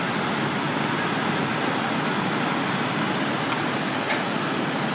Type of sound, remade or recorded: recorded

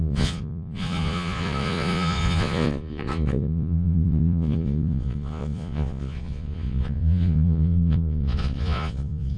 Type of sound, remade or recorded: remade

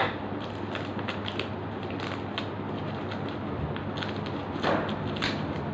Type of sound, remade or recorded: recorded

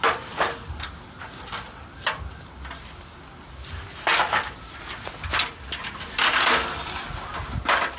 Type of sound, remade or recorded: recorded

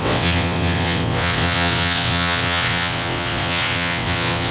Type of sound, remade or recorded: remade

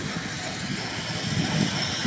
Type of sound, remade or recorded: recorded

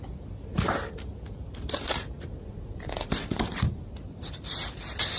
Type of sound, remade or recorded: recorded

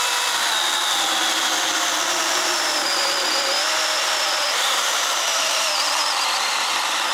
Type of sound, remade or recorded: recorded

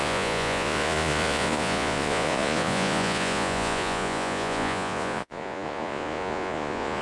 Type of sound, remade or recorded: remade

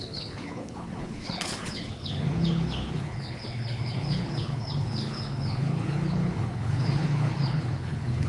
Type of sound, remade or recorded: remade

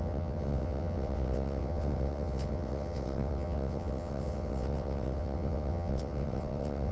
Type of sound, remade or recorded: remade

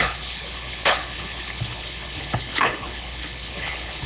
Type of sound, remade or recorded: remade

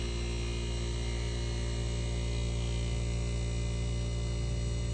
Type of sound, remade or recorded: recorded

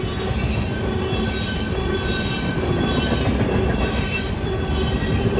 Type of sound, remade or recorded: recorded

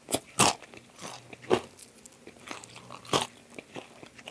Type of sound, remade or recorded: recorded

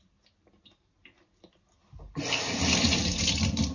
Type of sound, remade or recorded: recorded